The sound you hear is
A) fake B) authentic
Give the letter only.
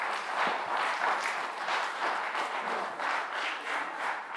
A